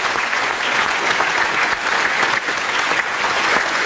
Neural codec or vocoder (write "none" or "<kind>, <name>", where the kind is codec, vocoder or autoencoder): vocoder, Vocos